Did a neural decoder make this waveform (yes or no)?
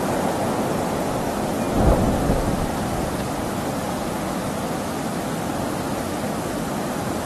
no